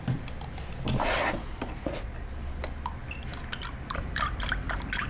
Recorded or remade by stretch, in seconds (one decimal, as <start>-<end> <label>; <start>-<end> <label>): 0.0-1.0 recorded; 1.0-2.3 remade; 2.3-5.1 recorded